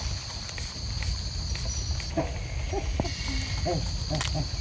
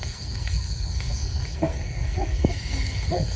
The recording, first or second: first